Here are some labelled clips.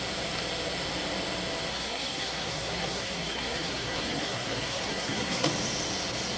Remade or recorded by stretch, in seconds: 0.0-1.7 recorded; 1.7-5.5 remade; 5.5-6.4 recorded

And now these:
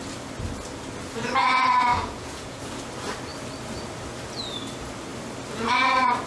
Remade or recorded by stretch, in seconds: 0.0-1.9 recorded; 1.9-2.6 remade; 2.6-6.3 recorded

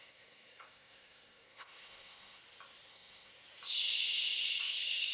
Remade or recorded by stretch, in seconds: 0.0-2.4 remade; 2.4-2.9 recorded; 2.9-3.3 remade; 3.3-4.6 recorded; 4.6-5.1 remade

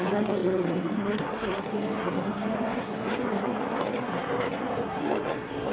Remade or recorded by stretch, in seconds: 0.0-5.7 remade

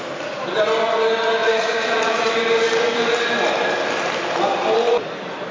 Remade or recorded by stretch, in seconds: 0.0-1.4 recorded; 1.4-2.3 remade; 2.3-5.5 recorded

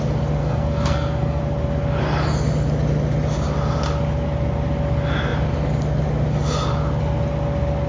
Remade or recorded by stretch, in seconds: 0.0-0.4 recorded; 0.4-1.4 remade; 1.4-7.9 recorded